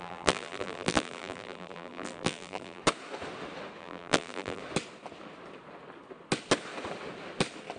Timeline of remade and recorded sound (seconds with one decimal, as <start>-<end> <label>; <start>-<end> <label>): 0.0-2.8 remade; 2.8-3.8 recorded; 3.8-4.6 remade; 4.6-7.8 recorded